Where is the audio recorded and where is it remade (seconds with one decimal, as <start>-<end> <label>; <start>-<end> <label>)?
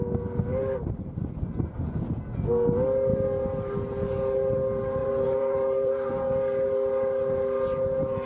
0.0-0.5 recorded; 0.5-1.3 remade; 1.3-5.0 recorded; 5.0-6.1 remade; 6.1-8.3 recorded